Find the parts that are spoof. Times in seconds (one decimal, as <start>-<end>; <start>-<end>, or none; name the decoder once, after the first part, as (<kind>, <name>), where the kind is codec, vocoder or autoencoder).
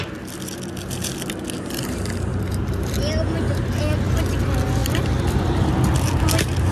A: 2.3-2.9 (vocoder, BigVGAN v2)